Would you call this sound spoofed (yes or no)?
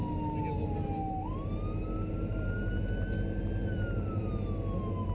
no